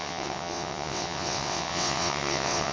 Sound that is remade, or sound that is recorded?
remade